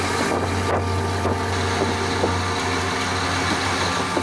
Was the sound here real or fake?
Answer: real